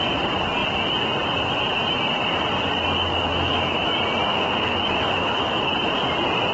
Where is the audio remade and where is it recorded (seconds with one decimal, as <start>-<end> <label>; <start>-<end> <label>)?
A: 0.0-3.3 recorded; 3.3-3.9 remade; 3.9-4.3 recorded; 4.3-5.6 remade; 5.6-6.5 recorded